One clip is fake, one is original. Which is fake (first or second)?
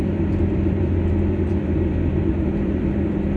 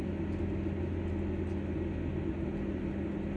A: first